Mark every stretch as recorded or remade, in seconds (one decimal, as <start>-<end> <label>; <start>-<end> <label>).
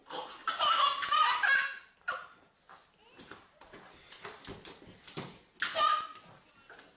0.0-0.4 recorded; 0.4-3.7 remade; 3.7-7.0 recorded